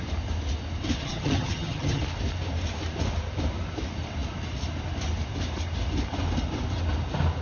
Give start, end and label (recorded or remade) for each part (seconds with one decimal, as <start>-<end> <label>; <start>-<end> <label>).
0.0-1.0 recorded; 1.0-2.0 remade; 2.0-7.4 recorded